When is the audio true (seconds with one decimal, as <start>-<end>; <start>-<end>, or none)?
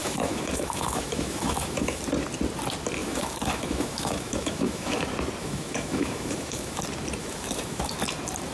2.0-3.0; 5.0-5.4; 6.8-7.2; 7.9-8.5